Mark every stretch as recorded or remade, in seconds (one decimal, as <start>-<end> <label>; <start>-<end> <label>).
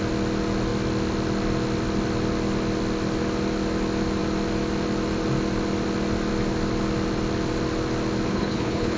0.0-8.3 recorded; 8.3-9.0 remade